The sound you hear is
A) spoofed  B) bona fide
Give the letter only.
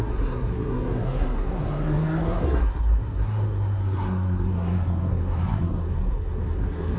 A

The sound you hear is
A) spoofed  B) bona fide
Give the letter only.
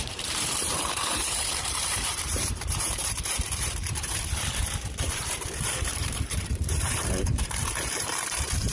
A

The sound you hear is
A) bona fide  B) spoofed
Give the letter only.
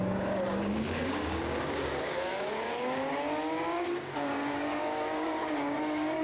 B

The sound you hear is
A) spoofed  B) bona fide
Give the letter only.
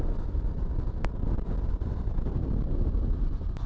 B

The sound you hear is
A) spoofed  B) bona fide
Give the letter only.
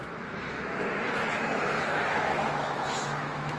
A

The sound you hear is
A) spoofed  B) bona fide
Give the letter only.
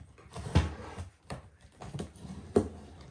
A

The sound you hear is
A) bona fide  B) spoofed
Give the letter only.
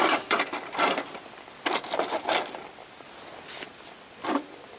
A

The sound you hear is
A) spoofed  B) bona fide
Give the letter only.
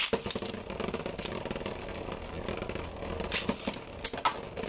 B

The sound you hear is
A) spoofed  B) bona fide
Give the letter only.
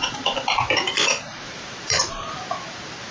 A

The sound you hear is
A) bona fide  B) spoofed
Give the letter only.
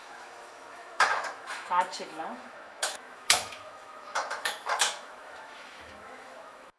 B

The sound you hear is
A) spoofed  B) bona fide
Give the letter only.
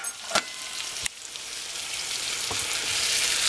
B